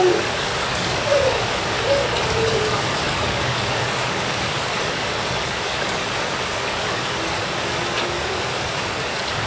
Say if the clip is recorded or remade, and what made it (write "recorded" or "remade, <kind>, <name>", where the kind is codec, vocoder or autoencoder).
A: remade, codec, DAC